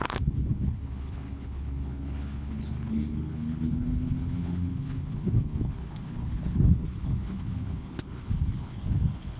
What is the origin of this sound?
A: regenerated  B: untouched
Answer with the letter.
A